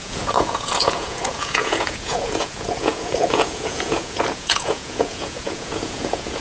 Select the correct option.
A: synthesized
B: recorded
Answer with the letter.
A